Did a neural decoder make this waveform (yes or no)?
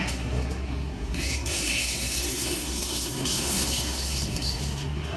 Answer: yes